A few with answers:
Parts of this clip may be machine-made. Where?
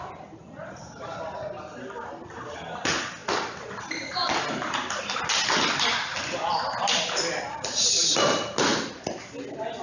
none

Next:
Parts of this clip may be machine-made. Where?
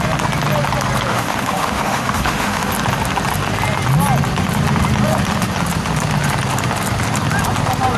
1.1-2.7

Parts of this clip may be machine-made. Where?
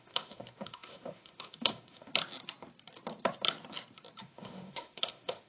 0.0-2.1; 4.2-5.5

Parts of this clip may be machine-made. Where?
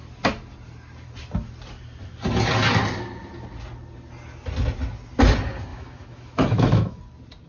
5.7-7.0